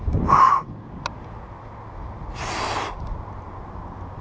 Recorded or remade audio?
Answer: recorded